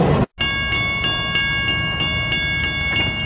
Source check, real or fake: real